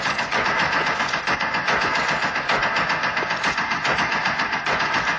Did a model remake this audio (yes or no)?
yes